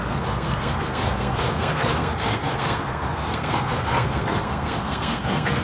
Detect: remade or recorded remade